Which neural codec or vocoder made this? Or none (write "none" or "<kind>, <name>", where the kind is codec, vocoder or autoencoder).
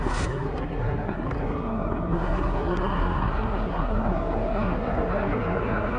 codec, SNAC